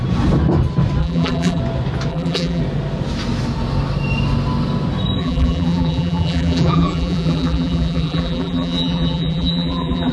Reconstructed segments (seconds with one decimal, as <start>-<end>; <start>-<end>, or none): 1.0-1.6; 2.1-2.6; 5.2-10.1